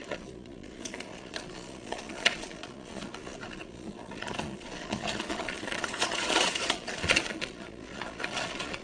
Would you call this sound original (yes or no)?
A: no